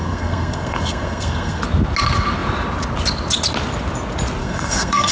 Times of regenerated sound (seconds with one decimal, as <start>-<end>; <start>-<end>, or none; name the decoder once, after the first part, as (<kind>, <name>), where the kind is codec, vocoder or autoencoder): 0.0-1.6 (codec, SNAC); 4.4-5.1